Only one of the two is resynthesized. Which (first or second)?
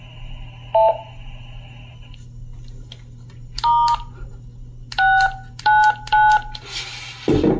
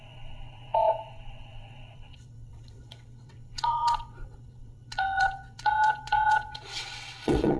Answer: second